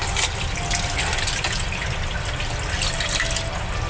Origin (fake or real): real